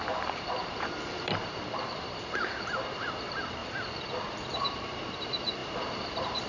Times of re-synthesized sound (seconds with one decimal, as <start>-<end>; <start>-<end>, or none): 0.0-3.6; 4.6-6.5